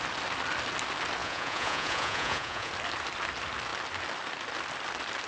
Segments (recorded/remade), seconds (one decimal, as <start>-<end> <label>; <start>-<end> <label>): 0.0-1.2 recorded; 1.2-2.7 remade; 2.7-5.3 recorded